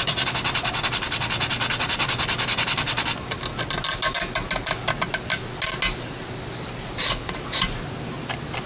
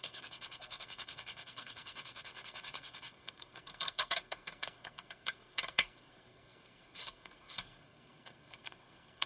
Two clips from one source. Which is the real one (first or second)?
first